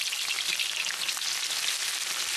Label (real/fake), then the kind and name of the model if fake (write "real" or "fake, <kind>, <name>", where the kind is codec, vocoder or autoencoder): real